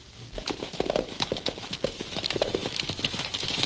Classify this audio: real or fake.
fake